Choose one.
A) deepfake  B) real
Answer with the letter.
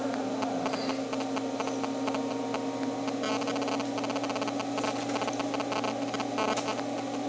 B